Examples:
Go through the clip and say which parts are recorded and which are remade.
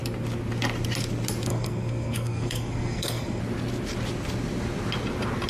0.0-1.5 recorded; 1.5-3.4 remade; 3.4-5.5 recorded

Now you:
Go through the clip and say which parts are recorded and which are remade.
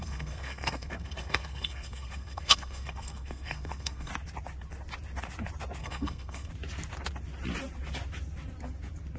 0.0-4.1 remade; 4.1-5.8 recorded; 5.8-6.5 remade; 6.5-9.2 recorded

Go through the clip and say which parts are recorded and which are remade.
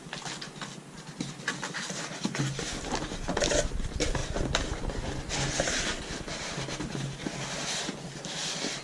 0.0-8.8 recorded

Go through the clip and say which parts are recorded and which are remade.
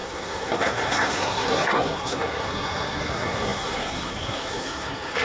0.0-5.2 remade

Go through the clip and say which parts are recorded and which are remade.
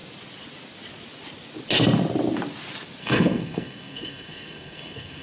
0.0-3.0 recorded; 3.0-5.2 remade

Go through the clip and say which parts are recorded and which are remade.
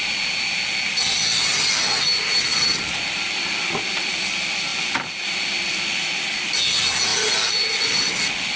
0.0-8.6 recorded